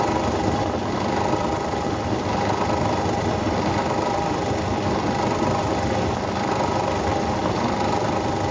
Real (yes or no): no